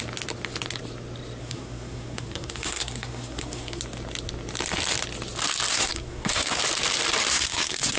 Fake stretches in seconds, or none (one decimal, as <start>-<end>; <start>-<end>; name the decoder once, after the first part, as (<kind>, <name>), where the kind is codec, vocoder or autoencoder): 1.4-3.8 (codec, SNAC); 5.7-6.6; 7.3-8.0